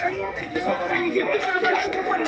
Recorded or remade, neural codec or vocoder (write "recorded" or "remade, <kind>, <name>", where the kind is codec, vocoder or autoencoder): remade, codec, SNAC